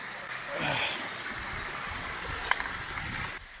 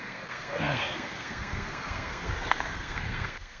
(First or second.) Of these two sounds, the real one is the first